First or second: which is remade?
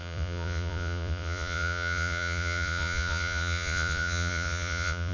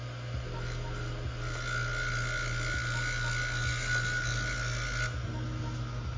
first